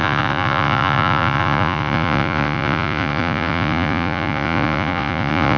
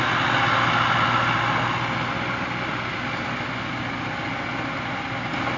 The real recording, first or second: second